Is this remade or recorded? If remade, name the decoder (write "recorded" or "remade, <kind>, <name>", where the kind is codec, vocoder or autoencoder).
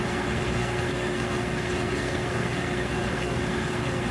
remade, codec, SNAC